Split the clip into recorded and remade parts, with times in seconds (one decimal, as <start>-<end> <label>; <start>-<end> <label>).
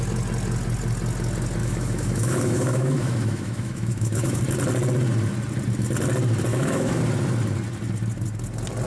0.0-1.6 recorded; 1.6-4.4 remade; 4.4-6.5 recorded; 6.5-7.0 remade; 7.0-8.9 recorded